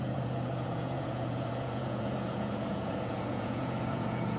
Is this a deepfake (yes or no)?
yes